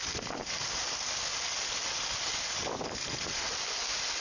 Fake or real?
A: real